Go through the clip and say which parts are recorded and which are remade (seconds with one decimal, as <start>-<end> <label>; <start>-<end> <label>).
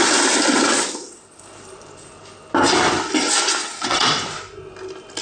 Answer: 0.0-3.6 recorded; 3.6-4.2 remade; 4.2-5.2 recorded